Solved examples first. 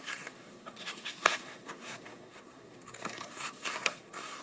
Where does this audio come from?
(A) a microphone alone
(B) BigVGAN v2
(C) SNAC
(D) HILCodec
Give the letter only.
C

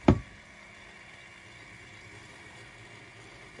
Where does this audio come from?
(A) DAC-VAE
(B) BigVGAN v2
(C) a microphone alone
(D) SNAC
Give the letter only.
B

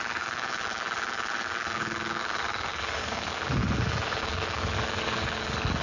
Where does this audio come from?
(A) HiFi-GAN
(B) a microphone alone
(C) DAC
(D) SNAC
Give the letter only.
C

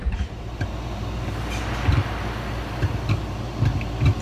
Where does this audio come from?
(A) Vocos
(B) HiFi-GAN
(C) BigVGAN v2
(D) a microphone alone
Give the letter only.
D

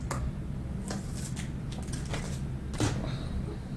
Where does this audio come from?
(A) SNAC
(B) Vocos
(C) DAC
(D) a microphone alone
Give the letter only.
D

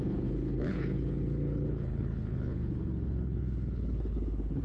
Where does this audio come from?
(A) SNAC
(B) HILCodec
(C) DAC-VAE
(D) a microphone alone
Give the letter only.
B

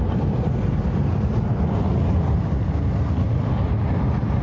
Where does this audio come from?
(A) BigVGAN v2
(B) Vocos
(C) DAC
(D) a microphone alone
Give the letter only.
D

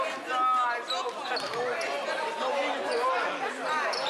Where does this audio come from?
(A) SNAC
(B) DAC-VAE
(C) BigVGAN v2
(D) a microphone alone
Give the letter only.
D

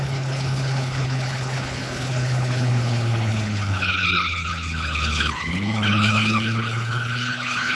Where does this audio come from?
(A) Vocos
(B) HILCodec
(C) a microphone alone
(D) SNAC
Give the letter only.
B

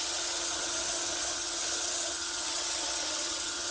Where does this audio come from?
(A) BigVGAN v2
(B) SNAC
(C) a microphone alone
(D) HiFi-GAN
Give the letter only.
D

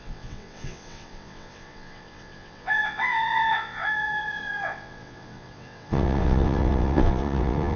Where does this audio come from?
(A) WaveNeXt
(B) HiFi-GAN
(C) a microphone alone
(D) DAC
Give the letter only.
A